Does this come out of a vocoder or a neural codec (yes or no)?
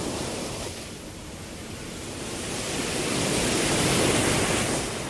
no